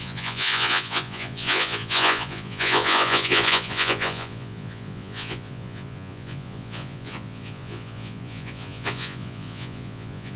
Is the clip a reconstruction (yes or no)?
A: yes